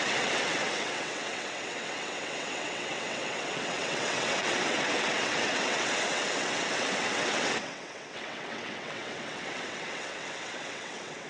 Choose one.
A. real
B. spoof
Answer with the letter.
B